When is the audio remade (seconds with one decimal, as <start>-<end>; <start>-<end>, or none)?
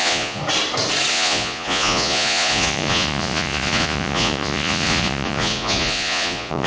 0.0-0.4; 1.1-6.7